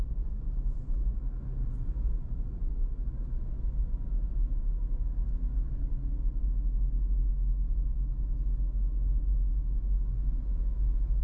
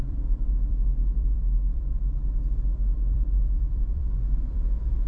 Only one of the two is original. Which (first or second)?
first